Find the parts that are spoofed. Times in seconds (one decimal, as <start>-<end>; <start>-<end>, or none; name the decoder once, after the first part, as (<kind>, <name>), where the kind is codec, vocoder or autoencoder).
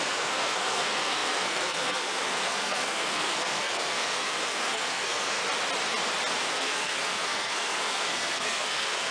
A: 0.0-5.4 (codec, SNAC); 6.5-9.1